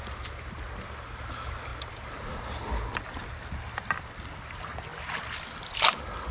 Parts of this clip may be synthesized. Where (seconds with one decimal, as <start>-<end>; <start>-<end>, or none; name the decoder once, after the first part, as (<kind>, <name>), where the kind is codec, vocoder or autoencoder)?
none